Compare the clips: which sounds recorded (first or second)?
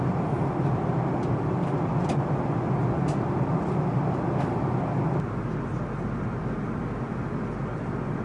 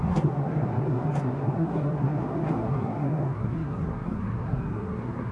first